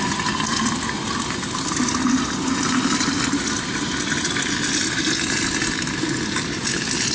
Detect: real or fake real